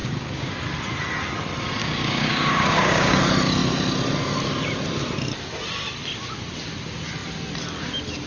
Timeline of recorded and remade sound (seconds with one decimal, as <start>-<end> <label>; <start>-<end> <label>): 0.0-0.5 remade; 0.5-1.8 recorded; 1.8-3.2 remade; 3.2-8.3 recorded